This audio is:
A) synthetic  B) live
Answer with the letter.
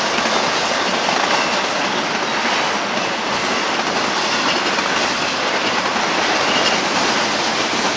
B